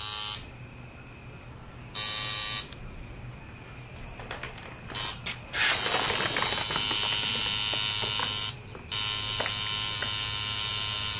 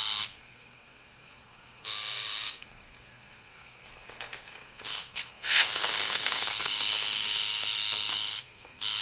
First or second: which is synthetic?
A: second